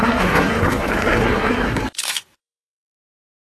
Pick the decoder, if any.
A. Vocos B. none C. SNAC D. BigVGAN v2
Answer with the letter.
C